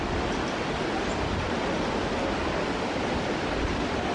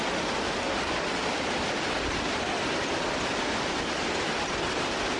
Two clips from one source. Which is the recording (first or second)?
second